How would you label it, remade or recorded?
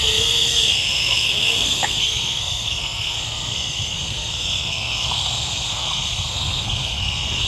remade